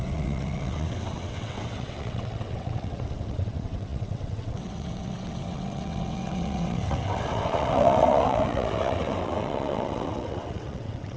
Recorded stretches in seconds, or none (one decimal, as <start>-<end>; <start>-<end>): none